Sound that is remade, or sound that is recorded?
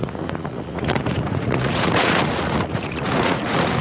remade